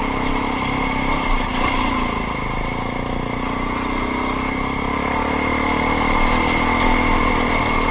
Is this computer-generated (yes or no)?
no